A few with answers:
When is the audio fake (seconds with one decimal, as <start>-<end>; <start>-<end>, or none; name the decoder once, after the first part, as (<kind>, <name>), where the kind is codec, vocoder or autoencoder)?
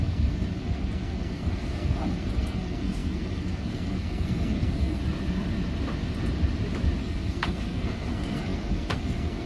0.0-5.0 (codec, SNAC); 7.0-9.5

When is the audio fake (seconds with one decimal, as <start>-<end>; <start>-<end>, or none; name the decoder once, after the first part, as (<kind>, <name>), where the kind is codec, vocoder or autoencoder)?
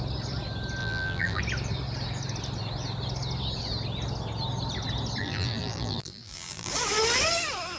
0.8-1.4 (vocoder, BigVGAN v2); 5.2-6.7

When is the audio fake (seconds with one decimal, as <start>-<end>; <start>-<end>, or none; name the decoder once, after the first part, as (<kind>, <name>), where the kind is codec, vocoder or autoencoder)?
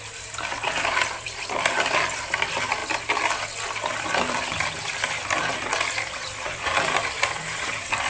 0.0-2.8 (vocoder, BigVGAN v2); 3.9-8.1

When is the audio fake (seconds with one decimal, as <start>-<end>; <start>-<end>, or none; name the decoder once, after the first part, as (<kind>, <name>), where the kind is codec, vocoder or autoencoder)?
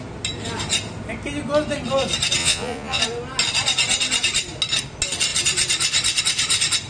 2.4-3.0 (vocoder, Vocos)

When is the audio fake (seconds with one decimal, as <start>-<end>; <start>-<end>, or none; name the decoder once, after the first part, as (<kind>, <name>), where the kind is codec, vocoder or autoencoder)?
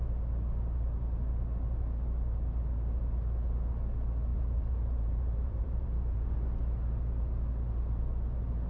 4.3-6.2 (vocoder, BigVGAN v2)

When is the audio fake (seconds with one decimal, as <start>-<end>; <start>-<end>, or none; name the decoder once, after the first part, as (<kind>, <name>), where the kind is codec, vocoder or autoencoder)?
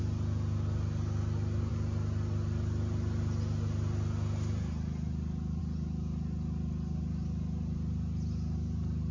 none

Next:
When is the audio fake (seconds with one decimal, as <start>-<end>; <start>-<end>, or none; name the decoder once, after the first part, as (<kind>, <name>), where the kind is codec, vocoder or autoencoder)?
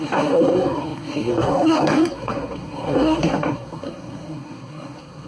0.0-5.3 (codec, SNAC)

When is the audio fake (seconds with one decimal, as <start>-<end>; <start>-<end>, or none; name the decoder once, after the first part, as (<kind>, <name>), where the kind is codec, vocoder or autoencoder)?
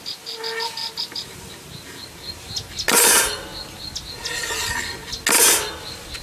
none